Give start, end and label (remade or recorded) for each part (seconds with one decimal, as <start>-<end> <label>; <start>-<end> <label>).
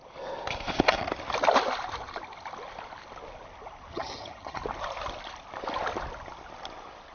0.0-3.9 recorded; 3.9-4.6 remade; 4.6-7.1 recorded